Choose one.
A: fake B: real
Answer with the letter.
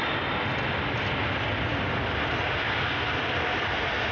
B